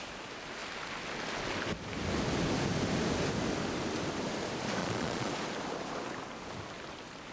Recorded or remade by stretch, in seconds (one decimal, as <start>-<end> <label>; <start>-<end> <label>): 0.0-4.8 recorded; 4.8-5.3 remade; 5.3-7.3 recorded